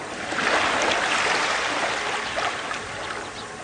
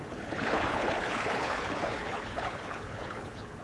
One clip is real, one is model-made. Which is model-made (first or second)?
second